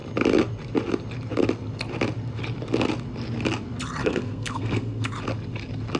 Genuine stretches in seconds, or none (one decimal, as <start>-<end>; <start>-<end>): 0.0-4.0; 5.1-6.0